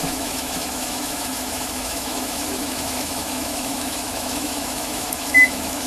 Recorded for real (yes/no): no